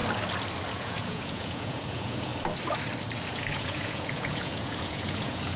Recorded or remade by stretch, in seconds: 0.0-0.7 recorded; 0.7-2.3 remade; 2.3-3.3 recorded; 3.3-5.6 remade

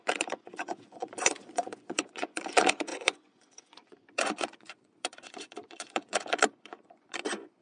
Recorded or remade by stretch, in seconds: 0.0-7.6 remade

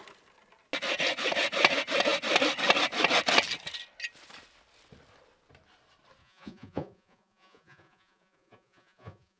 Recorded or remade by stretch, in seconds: 0.0-6.2 recorded; 6.2-9.4 remade

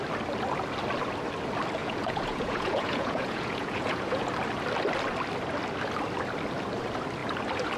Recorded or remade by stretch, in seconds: 0.0-1.8 recorded; 1.8-4.2 remade; 4.2-7.8 recorded

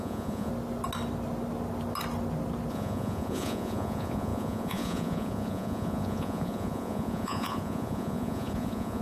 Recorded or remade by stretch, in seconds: 0.0-0.5 remade; 0.5-2.7 recorded; 2.7-9.0 remade